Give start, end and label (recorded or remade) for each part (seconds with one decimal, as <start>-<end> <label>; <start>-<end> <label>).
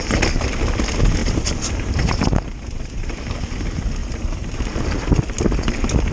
0.0-1.2 recorded; 1.2-3.2 remade; 3.2-4.0 recorded; 4.0-4.8 remade; 4.8-6.1 recorded